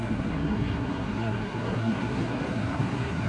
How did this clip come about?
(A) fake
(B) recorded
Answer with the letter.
A